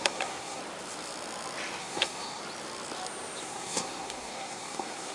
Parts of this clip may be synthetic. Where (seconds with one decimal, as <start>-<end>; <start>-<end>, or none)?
0.0-0.6; 1.8-2.4; 3.4-5.1